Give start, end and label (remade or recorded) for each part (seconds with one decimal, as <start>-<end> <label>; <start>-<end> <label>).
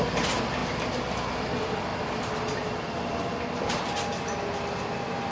0.0-5.3 recorded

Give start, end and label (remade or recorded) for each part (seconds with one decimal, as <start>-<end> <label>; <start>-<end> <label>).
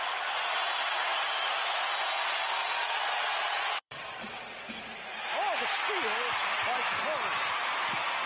0.0-2.6 recorded; 2.6-4.7 remade; 4.7-8.3 recorded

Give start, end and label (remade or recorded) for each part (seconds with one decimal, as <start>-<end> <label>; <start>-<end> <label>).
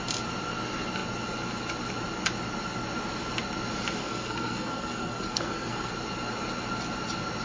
0.0-4.0 recorded; 4.0-5.9 remade; 5.9-7.4 recorded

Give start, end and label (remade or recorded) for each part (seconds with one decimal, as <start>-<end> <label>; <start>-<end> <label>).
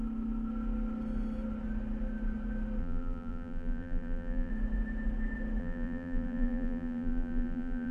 0.0-2.8 recorded; 2.8-4.5 remade; 4.5-5.6 recorded; 5.6-7.9 remade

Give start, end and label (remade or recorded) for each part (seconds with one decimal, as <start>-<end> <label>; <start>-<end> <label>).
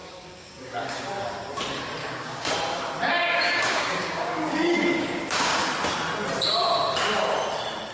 0.0-1.1 remade; 1.1-2.0 recorded; 2.0-2.5 remade; 2.5-3.1 recorded; 3.1-5.7 remade; 5.7-7.9 recorded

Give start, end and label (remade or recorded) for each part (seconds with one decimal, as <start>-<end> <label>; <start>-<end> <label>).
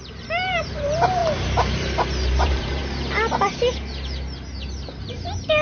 0.0-2.8 remade; 2.8-5.0 recorded; 5.0-5.6 remade